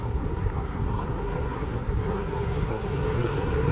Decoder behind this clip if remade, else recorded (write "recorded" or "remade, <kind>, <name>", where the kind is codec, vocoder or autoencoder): remade, codec, SNAC